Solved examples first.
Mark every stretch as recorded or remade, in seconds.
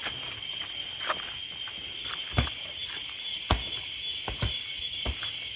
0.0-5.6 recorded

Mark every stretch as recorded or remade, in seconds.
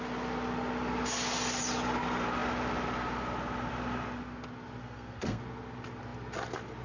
0.0-4.8 recorded; 4.8-5.4 remade; 5.4-6.8 recorded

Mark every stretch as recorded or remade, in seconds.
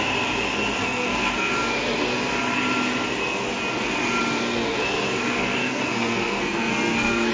0.0-0.8 recorded; 0.8-1.5 remade; 1.5-5.6 recorded; 5.6-7.3 remade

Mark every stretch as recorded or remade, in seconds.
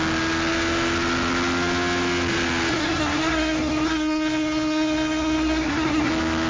0.0-2.7 recorded; 2.7-6.1 remade; 6.1-6.5 recorded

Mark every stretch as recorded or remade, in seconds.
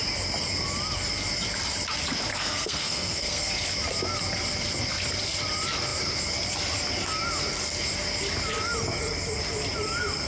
0.0-2.3 recorded; 2.3-3.5 remade; 3.5-10.3 recorded